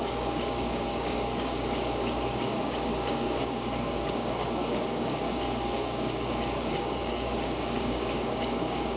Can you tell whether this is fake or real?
fake